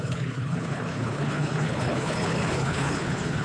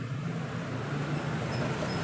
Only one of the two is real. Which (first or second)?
second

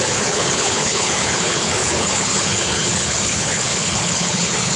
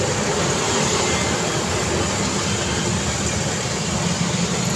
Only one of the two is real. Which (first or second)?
second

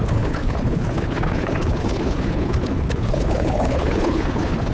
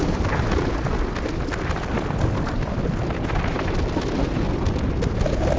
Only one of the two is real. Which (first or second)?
second